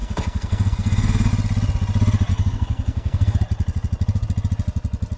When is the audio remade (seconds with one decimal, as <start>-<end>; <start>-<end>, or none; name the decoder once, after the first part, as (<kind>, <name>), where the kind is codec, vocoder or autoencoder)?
0.0-1.3 (codec, SNAC); 2.3-3.4